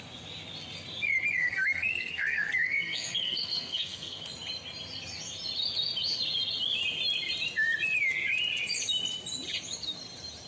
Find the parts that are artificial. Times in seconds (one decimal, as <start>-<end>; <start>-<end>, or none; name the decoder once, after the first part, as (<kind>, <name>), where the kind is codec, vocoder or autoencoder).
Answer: 1.4-4.2 (codec, SNAC)